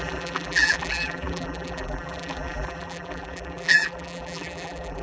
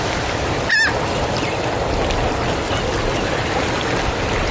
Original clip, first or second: second